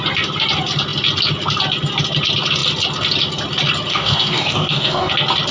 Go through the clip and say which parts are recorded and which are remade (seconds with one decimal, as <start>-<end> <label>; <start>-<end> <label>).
0.0-3.9 recorded; 3.9-5.1 remade; 5.1-5.5 recorded